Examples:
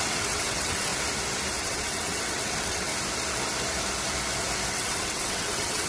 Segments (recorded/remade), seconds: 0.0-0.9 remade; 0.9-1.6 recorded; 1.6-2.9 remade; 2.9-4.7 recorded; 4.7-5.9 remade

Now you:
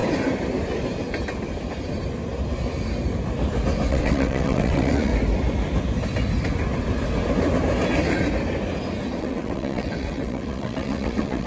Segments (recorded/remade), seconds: 0.0-3.9 recorded; 3.9-5.1 remade; 5.1-9.2 recorded; 9.2-11.5 remade

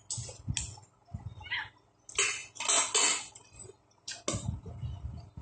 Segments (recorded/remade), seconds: 0.0-5.4 recorded

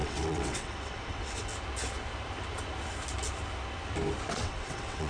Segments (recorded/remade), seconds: 0.0-1.5 remade; 1.5-4.3 recorded; 4.3-5.1 remade

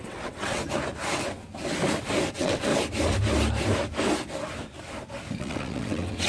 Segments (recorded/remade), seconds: 0.0-0.6 remade; 0.6-2.3 recorded; 2.3-2.7 remade; 2.7-5.4 recorded; 5.4-6.3 remade

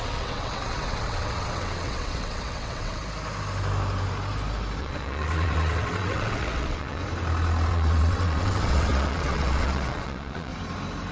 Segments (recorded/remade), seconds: 0.0-3.0 remade; 3.0-4.8 recorded; 4.8-7.0 remade; 7.0-7.7 recorded; 7.7-10.5 remade; 10.5-11.1 recorded

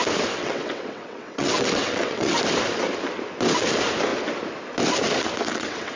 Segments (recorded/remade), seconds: 0.0-0.4 recorded; 0.4-2.4 remade; 2.4-5.5 recorded; 5.5-6.0 remade